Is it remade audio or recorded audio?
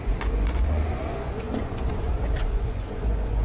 remade